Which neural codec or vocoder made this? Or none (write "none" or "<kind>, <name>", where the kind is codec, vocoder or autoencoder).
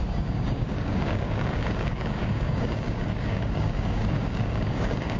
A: codec, DAC